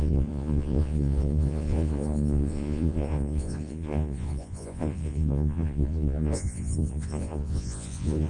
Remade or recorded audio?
remade